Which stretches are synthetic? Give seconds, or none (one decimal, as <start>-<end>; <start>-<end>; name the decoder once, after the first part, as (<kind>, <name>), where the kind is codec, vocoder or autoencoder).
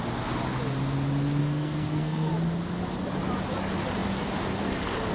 1.4-2.3 (codec, SNAC)